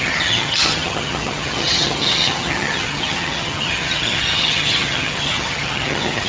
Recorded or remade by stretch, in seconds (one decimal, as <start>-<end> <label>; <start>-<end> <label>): 0.0-6.3 remade